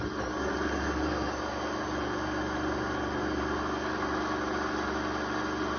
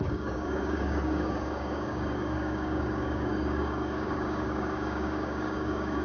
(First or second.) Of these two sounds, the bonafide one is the first